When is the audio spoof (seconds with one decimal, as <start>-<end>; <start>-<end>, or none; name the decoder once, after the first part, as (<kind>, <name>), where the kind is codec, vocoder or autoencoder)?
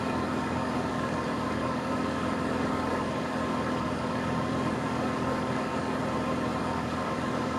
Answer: 0.0-6.0 (codec, DAC); 6.6-7.6